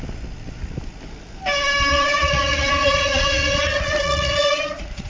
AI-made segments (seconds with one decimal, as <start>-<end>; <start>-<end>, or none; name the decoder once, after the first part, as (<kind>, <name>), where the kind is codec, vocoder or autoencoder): 1.9-5.1 (vocoder, Vocos)